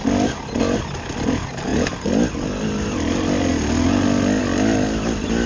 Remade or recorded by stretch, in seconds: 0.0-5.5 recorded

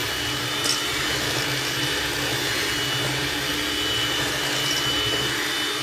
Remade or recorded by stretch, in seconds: 0.0-5.8 recorded

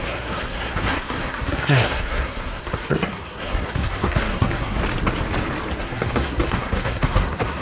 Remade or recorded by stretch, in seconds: 0.0-4.8 remade; 4.8-5.8 recorded; 5.8-7.6 remade

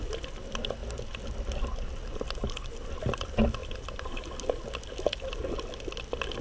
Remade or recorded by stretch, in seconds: 0.0-3.6 recorded; 3.6-4.3 remade; 4.3-6.4 recorded

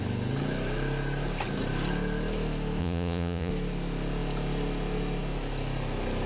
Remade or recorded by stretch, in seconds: 0.0-2.8 recorded; 2.8-3.5 remade; 3.5-6.3 recorded

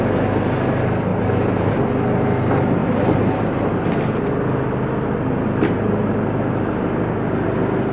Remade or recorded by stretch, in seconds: 0.0-1.1 recorded; 1.1-1.8 remade; 1.8-7.9 recorded